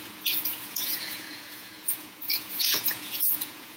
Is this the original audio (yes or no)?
no